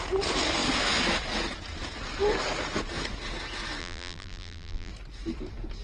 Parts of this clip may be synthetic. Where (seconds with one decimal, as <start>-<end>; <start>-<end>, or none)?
3.8-4.9